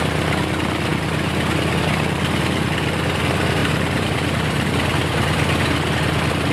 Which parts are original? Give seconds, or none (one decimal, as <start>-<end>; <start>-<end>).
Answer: 0.0-3.6; 4.7-6.5